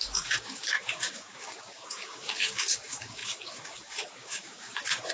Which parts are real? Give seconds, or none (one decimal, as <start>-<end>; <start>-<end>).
none